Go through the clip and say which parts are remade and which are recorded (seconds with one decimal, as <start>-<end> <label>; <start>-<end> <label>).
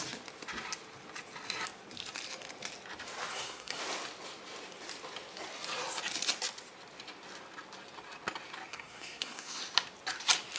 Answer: 0.0-3.3 recorded; 3.3-3.8 remade; 3.8-8.7 recorded; 8.7-9.6 remade; 9.6-10.6 recorded